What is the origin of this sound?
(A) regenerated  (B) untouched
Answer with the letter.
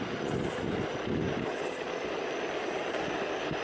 B